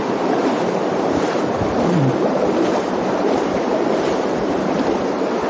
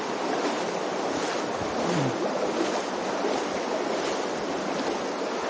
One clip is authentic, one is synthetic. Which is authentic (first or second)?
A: second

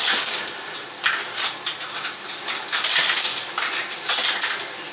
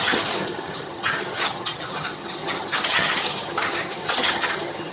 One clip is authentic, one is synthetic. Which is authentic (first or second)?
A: first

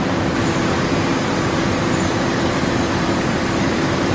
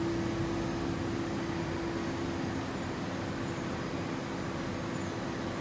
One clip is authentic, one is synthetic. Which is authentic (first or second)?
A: second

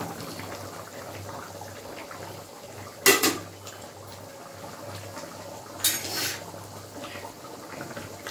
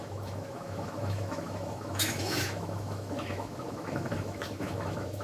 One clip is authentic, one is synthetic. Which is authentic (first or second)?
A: first